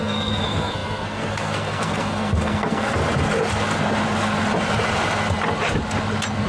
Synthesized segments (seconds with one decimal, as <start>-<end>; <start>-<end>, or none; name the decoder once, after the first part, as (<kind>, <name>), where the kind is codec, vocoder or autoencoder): 0.0-3.0 (codec, SNAC)